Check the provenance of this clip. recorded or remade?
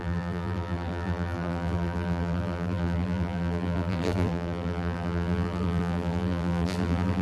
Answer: remade